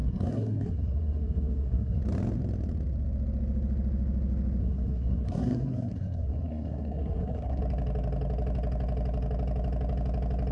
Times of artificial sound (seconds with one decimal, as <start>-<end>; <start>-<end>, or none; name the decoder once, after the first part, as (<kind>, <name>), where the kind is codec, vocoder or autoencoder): 0.0-2.0 (codec, SNAC); 4.6-7.6